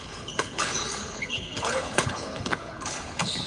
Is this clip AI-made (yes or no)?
yes